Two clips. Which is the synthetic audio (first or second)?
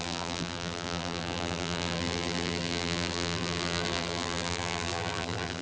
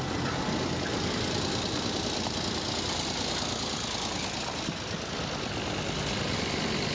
first